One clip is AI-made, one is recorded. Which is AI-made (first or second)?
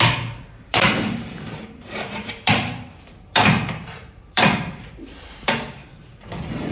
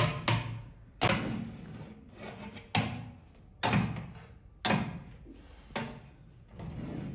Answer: first